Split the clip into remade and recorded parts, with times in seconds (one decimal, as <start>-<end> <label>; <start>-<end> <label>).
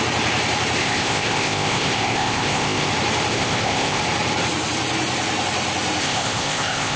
0.0-0.8 recorded; 0.8-2.9 remade; 2.9-3.3 recorded; 3.3-4.0 remade; 4.0-6.0 recorded; 6.0-7.0 remade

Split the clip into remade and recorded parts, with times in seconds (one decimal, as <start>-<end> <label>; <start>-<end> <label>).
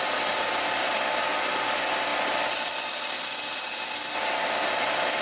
0.0-5.2 recorded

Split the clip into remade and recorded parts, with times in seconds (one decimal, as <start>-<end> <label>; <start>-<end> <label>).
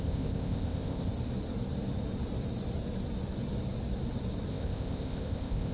0.0-1.1 remade; 1.1-4.5 recorded; 4.5-5.7 remade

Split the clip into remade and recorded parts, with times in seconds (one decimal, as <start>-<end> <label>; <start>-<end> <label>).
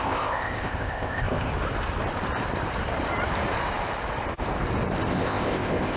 0.0-1.5 remade; 1.5-5.1 recorded; 5.1-6.0 remade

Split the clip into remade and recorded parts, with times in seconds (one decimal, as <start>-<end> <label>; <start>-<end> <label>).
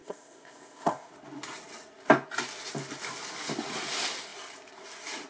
0.0-1.1 remade; 1.1-5.3 recorded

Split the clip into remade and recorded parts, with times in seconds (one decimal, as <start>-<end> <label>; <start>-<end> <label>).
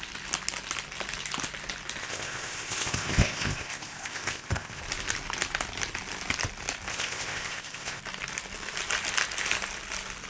0.0-2.0 recorded; 2.0-4.8 remade; 4.8-6.9 recorded; 6.9-8.0 remade; 8.0-10.3 recorded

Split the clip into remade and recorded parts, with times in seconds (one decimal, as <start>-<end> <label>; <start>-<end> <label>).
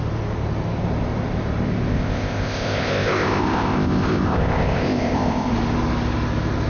0.0-1.9 recorded; 1.9-5.5 remade; 5.5-6.7 recorded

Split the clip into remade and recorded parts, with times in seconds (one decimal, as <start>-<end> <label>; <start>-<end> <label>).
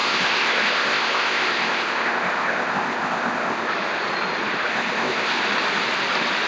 0.0-3.7 remade; 3.7-4.7 recorded; 4.7-5.4 remade; 5.4-6.5 recorded